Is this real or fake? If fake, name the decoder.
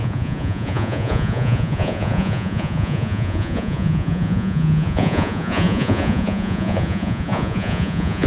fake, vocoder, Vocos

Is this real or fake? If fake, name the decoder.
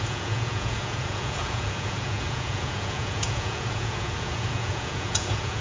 fake, vocoder, Vocos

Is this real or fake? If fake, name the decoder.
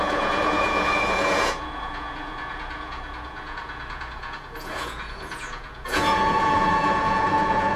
fake, vocoder, Vocos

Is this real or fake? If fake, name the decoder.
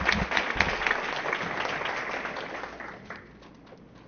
real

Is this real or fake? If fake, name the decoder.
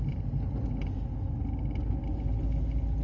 real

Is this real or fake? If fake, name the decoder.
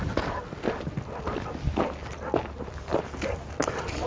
real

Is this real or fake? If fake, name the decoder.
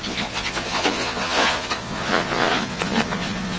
fake, vocoder, Vocos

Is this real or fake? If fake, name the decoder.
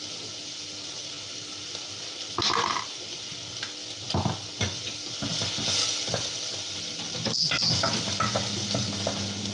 real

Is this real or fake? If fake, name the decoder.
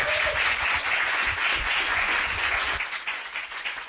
fake, vocoder, Vocos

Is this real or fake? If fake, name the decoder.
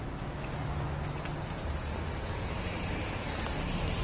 real